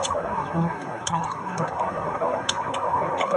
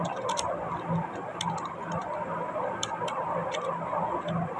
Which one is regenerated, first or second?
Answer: first